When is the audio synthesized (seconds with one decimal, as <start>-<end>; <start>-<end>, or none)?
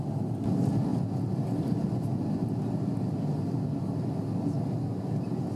none